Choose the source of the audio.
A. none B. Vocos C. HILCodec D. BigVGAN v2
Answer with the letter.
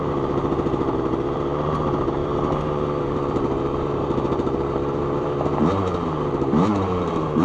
D